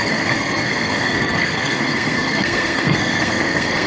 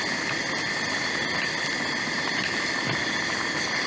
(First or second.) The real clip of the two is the second